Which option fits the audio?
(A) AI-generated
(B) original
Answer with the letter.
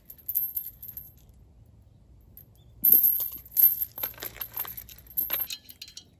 B